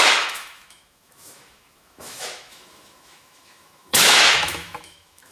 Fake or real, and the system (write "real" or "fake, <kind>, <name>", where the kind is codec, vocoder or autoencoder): fake, autoencoder, DAC-VAE